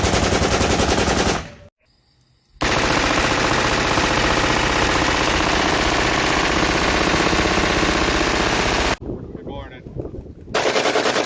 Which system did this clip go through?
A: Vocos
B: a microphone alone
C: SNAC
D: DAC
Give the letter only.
B